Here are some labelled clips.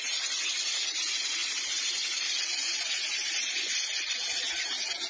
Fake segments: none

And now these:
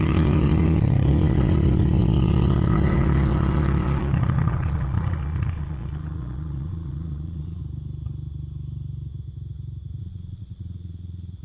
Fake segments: 0.0-7.6 (vocoder, Vocos); 10.0-11.4

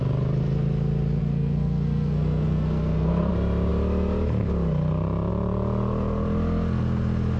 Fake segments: 1.2-3.3 (codec, SNAC)

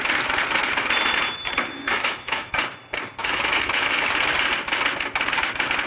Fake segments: 1.9-2.5 (autoencoder, DAC-VAE); 3.2-4.1

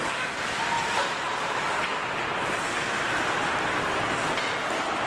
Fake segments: none

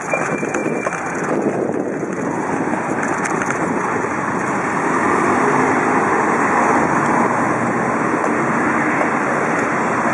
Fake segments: none

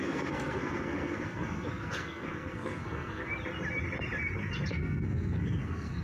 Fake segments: 0.0-3.3 (codec, SNAC); 4.7-6.0

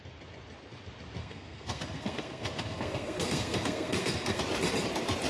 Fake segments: 1.2-4.4 (codec, SNAC)